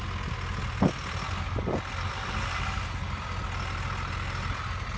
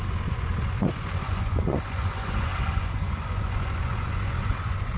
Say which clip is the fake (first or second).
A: second